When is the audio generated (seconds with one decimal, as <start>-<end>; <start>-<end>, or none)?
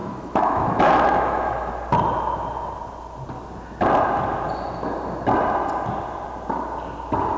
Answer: 0.0-1.7